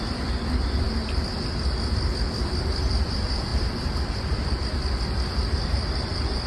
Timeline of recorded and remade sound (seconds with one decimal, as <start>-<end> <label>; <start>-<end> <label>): 0.0-6.5 remade